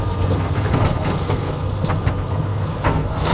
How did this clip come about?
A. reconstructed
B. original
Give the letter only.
A